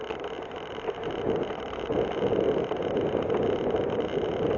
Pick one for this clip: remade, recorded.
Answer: recorded